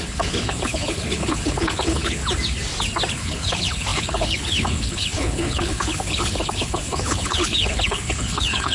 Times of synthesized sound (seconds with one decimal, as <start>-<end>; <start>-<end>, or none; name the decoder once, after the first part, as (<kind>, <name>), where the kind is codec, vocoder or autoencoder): 0.0-2.2 (codec, HILCodec); 3.1-8.7